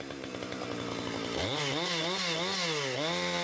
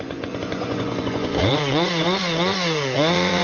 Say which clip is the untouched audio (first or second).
first